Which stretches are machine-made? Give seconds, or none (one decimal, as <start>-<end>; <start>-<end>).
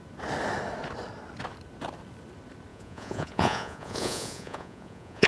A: 2.7-5.3